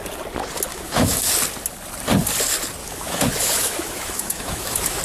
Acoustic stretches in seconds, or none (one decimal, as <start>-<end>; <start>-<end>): 0.0-0.7; 1.3-2.8